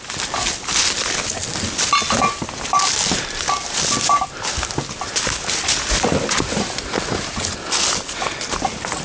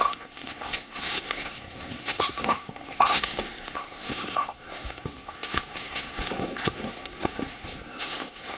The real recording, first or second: first